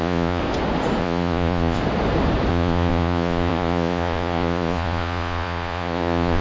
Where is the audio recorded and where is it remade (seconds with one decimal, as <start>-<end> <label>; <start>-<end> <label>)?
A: 0.0-0.4 remade; 0.4-1.0 recorded; 1.0-1.8 remade; 1.8-2.5 recorded; 2.5-6.4 remade